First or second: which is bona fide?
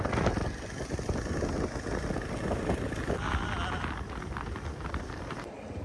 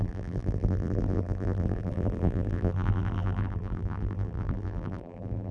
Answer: first